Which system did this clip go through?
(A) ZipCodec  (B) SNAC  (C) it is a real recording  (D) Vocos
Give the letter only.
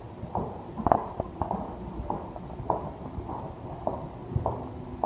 C